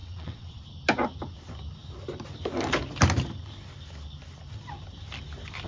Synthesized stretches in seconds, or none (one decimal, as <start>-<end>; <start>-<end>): 0.0-0.6